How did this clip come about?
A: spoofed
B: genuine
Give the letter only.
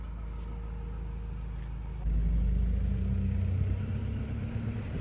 B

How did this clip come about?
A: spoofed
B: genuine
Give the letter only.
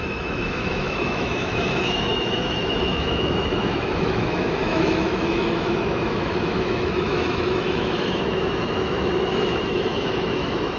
A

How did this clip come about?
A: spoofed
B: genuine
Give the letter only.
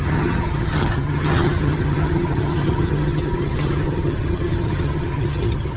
A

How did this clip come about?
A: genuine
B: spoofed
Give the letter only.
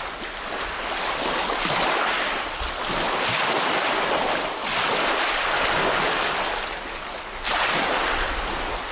A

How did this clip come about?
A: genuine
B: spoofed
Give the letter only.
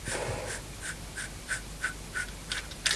A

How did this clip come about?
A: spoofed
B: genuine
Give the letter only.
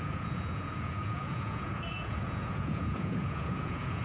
A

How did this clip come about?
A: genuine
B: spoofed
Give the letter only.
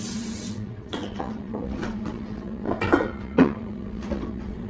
B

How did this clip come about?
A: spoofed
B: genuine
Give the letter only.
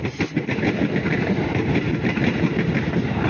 B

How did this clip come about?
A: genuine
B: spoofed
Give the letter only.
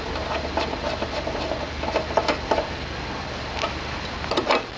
A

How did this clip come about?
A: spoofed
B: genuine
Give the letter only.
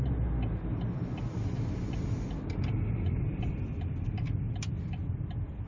B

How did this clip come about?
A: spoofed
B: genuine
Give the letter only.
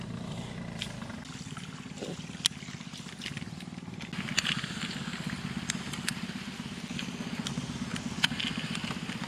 B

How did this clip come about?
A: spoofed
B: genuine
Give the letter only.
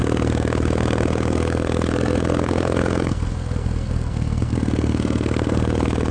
A